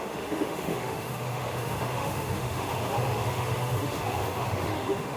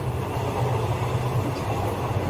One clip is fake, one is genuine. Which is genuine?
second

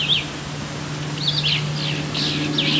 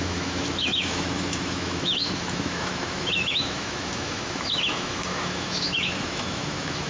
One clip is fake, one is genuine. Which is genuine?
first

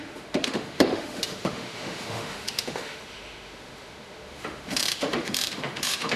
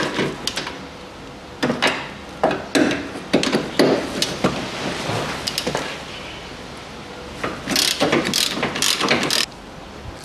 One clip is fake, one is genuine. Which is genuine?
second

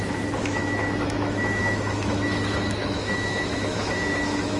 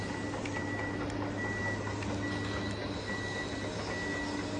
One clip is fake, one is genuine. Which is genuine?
second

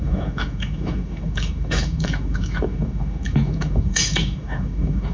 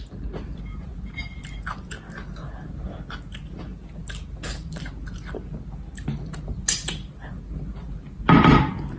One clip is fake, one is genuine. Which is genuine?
second